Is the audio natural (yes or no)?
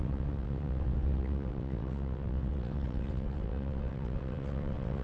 no